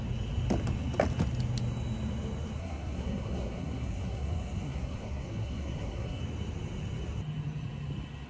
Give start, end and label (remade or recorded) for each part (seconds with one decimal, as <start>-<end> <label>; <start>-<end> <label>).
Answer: 0.0-2.6 recorded; 2.6-6.2 remade; 6.2-8.3 recorded